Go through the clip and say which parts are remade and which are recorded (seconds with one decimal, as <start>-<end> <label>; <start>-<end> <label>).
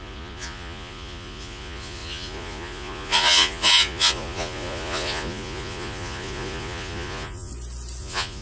0.0-7.5 remade; 7.5-8.0 recorded; 8.0-8.4 remade